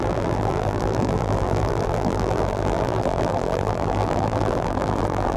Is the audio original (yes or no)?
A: no